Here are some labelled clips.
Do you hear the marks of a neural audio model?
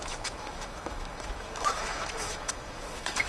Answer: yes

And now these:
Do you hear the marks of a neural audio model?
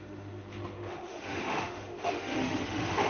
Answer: yes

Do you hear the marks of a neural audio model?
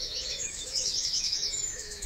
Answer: yes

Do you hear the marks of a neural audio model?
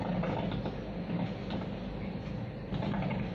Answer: no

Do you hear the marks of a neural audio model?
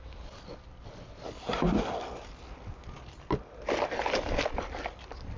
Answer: no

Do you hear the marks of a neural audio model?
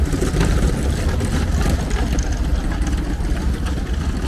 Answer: no